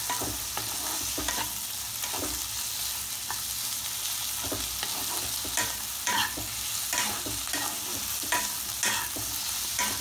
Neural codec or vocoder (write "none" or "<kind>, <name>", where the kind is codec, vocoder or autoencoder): none